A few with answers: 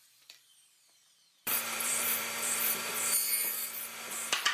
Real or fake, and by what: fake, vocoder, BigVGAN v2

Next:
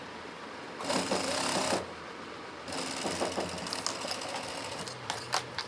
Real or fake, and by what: real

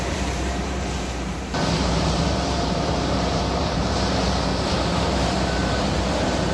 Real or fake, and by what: fake, vocoder, BigVGAN v2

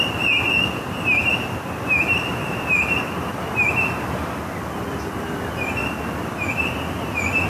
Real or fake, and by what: real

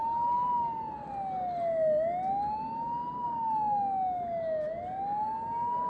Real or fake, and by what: real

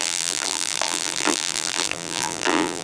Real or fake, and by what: fake, vocoder, BigVGAN v2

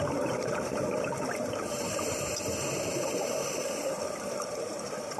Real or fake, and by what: fake, vocoder, BigVGAN v2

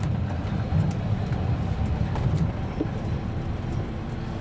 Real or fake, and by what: fake, vocoder, BigVGAN v2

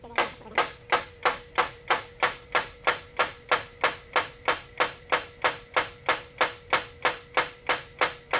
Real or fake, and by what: fake, vocoder, BigVGAN v2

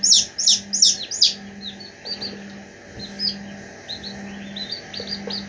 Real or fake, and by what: real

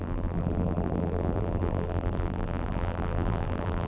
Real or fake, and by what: fake, vocoder, BigVGAN v2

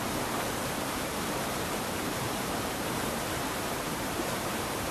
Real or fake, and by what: fake, vocoder, BigVGAN v2